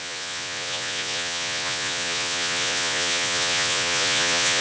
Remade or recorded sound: remade